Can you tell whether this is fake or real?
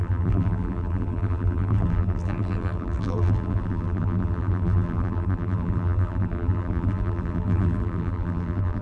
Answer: fake